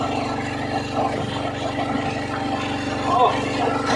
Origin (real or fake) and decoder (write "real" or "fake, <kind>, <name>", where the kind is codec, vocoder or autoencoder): real